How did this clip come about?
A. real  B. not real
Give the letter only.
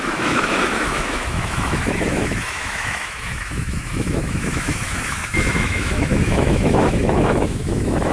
B